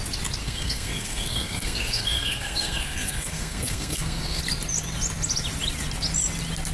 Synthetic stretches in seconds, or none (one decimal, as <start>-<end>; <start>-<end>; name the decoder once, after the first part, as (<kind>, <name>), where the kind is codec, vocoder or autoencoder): 0.4-4.4 (codec, SNAC)